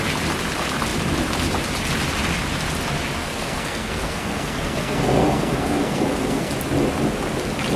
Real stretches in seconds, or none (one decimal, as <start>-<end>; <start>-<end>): 0.0-3.2; 6.5-7.8